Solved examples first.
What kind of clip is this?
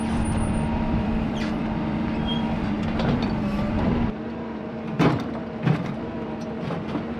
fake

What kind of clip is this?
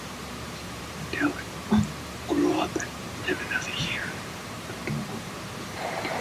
fake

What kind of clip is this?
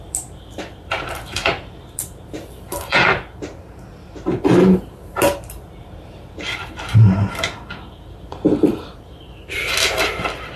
fake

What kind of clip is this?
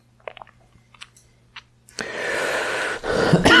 real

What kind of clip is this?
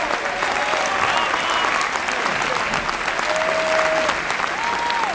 real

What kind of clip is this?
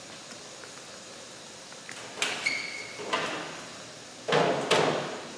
real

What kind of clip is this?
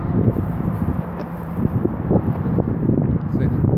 fake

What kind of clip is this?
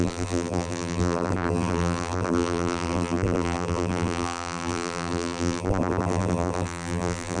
fake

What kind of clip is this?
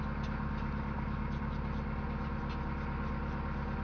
real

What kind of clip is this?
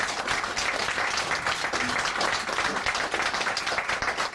real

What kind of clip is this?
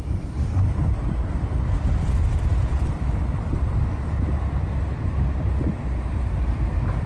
fake